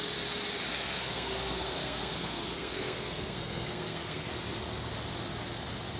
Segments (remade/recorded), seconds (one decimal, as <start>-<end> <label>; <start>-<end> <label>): 0.0-0.7 recorded; 0.7-4.3 remade; 4.3-6.0 recorded